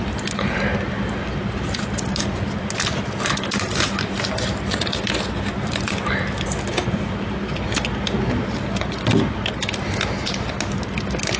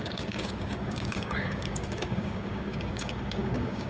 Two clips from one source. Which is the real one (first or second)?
first